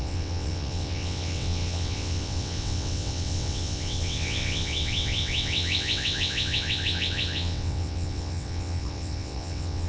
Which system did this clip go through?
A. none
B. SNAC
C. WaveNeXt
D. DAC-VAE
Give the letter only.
C